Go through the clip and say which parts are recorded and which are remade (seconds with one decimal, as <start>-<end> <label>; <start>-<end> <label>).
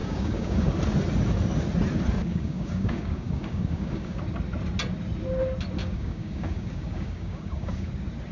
0.0-0.7 remade; 0.7-2.2 recorded; 2.2-4.2 remade; 4.2-5.8 recorded; 5.8-7.9 remade; 7.9-8.3 recorded